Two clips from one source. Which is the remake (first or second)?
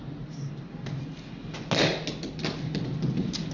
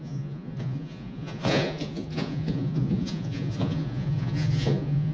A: second